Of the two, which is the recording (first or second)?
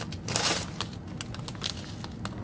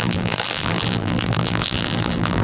first